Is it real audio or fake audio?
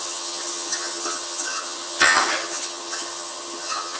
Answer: fake